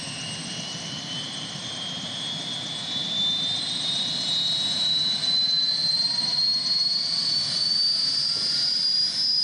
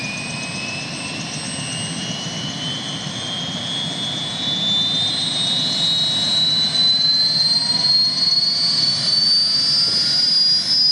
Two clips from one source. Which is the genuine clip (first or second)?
second